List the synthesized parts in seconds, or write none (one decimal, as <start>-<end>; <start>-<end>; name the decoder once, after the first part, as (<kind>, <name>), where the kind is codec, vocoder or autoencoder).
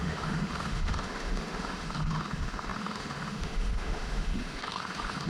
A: 0.0-5.3 (autoencoder, DAC-VAE)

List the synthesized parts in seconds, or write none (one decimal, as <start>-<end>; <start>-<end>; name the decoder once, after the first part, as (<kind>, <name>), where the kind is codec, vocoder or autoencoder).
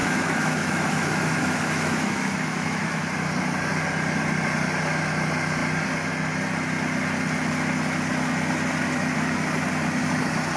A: 0.0-3.0 (autoencoder, DAC-VAE)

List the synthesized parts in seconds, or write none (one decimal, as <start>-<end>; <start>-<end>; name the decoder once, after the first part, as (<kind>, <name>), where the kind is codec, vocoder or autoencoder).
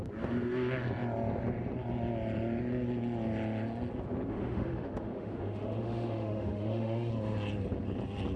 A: 4.3-7.1 (autoencoder, DAC-VAE)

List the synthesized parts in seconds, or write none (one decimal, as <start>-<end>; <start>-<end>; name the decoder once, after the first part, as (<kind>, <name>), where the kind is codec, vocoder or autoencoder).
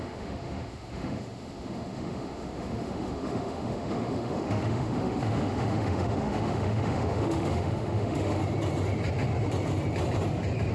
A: 0.0-8.4 (autoencoder, DAC-VAE)